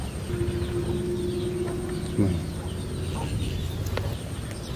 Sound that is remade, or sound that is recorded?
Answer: recorded